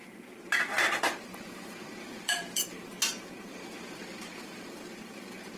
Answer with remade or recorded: remade